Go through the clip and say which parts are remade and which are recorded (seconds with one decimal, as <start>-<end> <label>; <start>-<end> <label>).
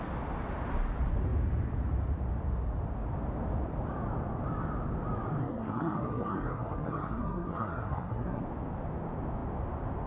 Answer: 0.0-5.4 recorded; 5.4-8.4 remade; 8.4-10.1 recorded